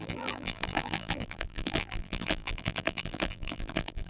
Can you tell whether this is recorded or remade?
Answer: remade